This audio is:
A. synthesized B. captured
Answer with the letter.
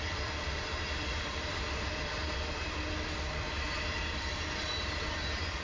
A